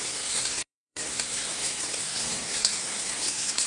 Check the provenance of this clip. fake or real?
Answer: fake